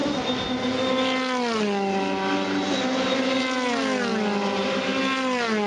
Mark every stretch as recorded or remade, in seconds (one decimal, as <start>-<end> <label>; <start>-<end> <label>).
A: 0.0-5.7 recorded